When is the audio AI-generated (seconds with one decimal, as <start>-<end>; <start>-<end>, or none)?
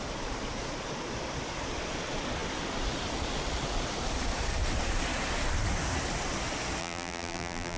6.8-7.8